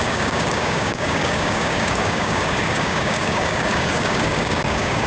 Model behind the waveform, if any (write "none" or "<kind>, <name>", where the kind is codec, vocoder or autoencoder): codec, DAC